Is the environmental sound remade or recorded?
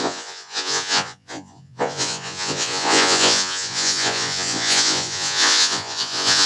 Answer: remade